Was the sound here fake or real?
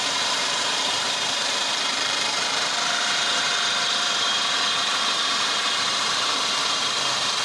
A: fake